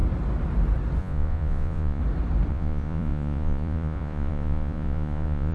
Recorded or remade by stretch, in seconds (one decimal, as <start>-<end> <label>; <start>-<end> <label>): 0.0-1.0 recorded; 1.0-2.0 remade; 2.0-2.5 recorded; 2.5-5.5 remade